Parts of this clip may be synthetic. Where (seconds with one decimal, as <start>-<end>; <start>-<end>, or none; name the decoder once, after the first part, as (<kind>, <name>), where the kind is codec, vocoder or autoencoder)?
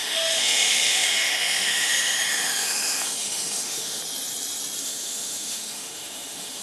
0.0-4.0 (autoencoder, DAC-VAE); 4.8-6.6